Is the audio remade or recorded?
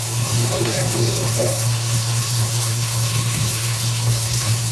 remade